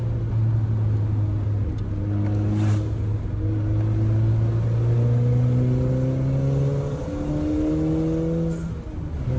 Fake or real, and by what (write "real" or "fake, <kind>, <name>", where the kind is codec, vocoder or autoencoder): real